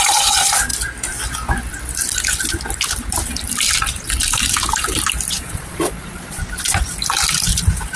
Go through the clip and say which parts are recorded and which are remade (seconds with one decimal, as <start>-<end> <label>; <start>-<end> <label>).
0.0-0.7 remade; 0.7-5.3 recorded; 5.3-6.4 remade; 6.4-8.0 recorded